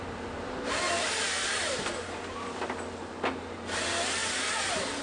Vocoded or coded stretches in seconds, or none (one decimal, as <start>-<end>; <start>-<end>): none